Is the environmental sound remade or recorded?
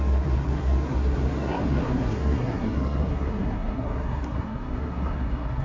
remade